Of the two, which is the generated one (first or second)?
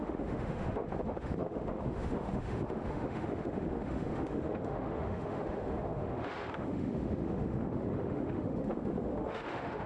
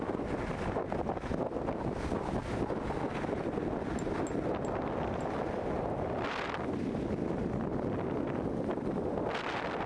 first